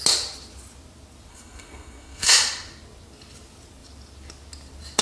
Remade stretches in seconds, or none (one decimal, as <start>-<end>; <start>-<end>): 1.3-2.3